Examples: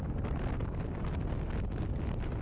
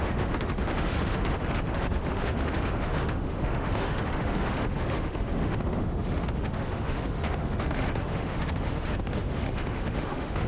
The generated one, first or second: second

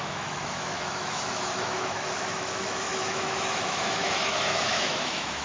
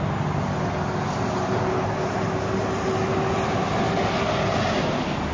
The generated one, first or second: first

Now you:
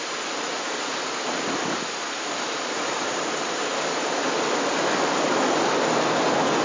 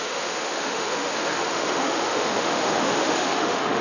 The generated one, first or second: second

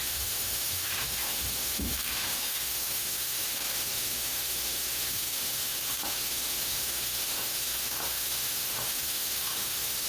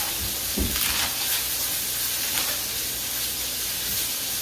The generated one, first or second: first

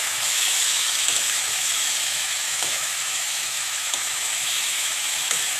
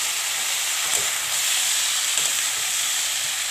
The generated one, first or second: first